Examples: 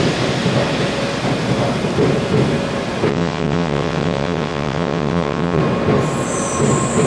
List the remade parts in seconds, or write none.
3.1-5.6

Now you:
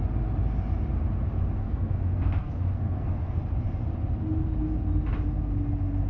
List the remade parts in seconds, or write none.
1.6-3.4

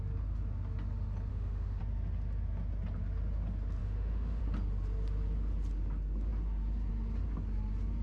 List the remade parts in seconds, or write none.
1.3-1.8; 3.8-4.4

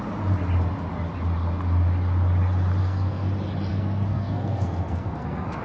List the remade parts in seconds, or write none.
2.8-3.3; 3.7-5.6

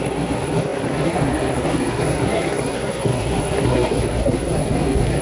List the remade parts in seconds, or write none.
0.0-5.2

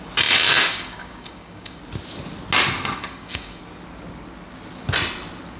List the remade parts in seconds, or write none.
0.7-1.8; 3.0-3.6